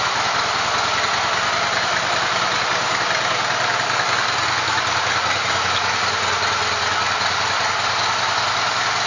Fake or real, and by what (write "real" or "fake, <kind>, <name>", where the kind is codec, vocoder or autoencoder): real